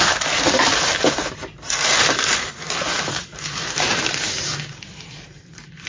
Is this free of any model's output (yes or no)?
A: no